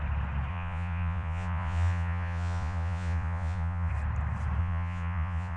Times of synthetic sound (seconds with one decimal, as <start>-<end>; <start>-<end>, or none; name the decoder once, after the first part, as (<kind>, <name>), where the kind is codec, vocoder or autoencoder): 0.5-3.9 (vocoder, Vocos); 4.6-5.6